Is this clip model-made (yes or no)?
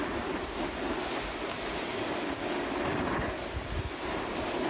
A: no